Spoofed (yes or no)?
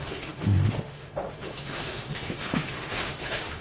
yes